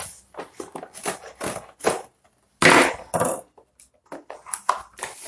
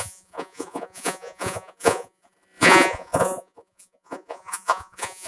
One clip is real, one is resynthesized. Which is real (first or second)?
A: first